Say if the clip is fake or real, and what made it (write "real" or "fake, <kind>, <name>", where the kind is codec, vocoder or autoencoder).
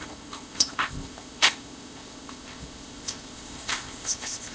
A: fake, codec, ZipCodec